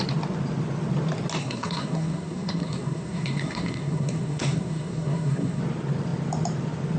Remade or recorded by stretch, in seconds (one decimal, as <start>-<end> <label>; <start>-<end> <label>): 0.0-1.4 recorded; 1.4-5.6 remade; 5.6-7.0 recorded

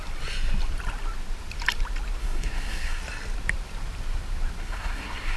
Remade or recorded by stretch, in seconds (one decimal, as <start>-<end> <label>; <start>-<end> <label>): 0.0-2.2 recorded; 2.2-3.0 remade; 3.0-4.6 recorded; 4.6-5.4 remade

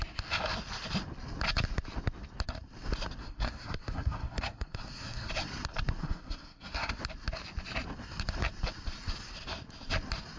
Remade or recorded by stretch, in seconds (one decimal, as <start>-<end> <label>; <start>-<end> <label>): 0.0-3.2 recorded; 3.2-5.3 remade; 5.3-6.0 recorded; 6.0-7.0 remade; 7.0-10.4 recorded